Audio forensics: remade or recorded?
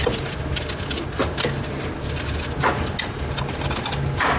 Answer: recorded